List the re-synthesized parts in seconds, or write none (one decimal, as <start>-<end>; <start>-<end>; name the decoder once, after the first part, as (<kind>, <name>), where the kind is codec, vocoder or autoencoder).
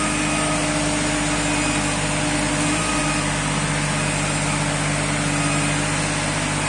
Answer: none